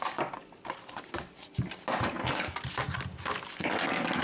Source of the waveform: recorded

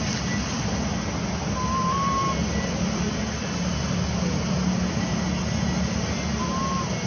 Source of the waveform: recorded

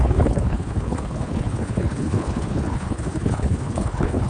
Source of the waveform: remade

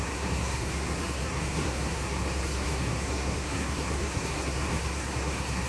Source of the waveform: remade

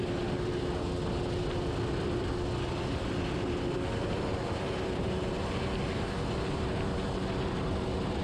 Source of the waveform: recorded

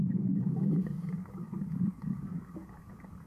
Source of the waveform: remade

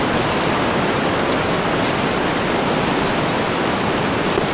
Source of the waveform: recorded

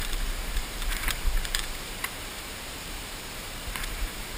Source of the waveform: remade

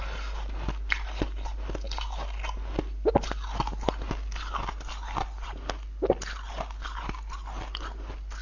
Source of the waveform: recorded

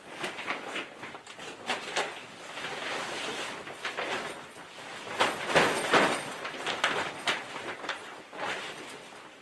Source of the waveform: recorded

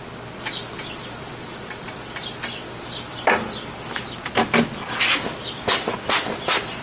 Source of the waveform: recorded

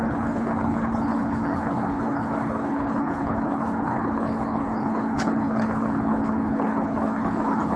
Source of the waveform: remade